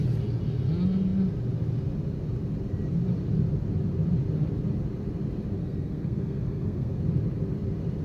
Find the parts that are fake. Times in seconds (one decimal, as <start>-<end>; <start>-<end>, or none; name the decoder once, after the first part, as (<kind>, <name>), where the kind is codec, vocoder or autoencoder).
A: 5.6-7.0 (codec, SNAC)